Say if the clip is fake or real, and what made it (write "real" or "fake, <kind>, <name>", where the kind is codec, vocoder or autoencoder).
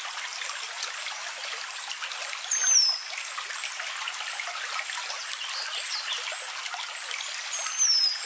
real